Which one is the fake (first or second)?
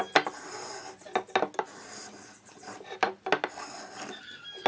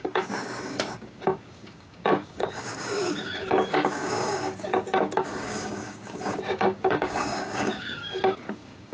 second